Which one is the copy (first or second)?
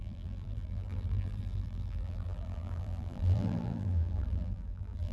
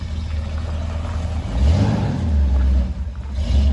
first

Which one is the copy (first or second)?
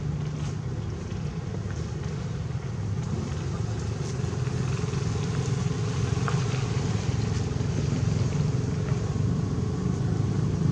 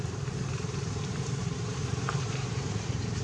second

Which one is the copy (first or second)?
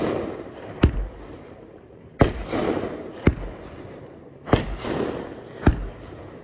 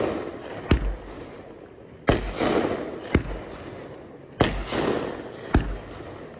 first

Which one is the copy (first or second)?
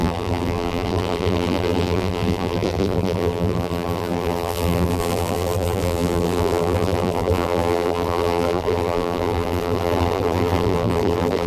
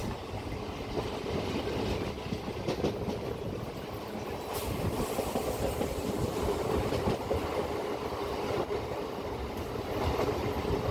first